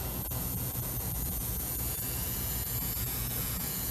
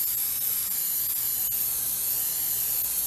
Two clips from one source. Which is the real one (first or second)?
second